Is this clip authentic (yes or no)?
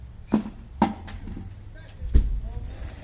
yes